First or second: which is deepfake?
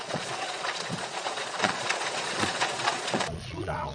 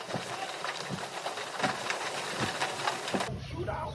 first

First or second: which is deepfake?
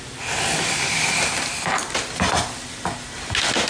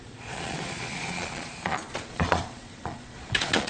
second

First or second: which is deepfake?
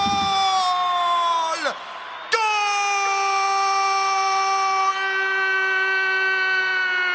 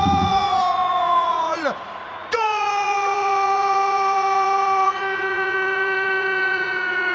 second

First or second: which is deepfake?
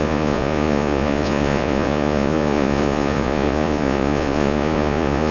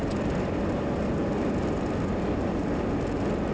first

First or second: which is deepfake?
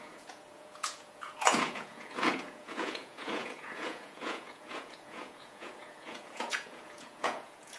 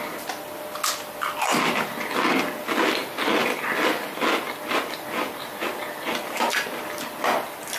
first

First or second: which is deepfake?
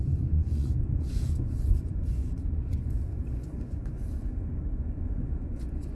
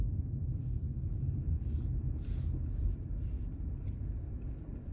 first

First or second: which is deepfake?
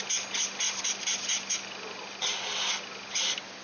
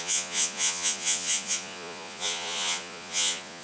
second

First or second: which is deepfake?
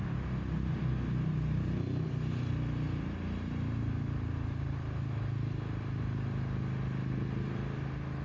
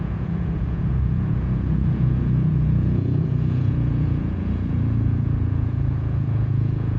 second